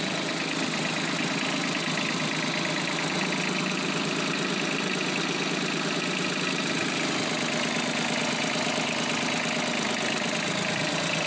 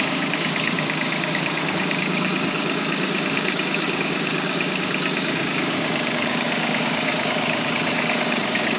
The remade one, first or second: second